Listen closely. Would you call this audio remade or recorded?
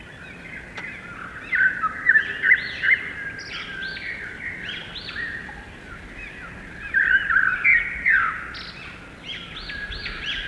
recorded